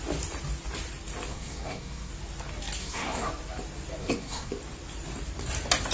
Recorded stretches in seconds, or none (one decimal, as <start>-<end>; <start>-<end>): 0.0-1.3; 2.1-2.8; 3.3-4.0; 4.5-5.9